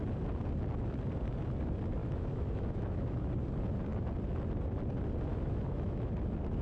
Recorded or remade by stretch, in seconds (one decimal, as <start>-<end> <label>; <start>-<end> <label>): 0.0-2.0 recorded; 2.0-3.3 remade; 3.3-5.3 recorded; 5.3-6.1 remade; 6.1-6.6 recorded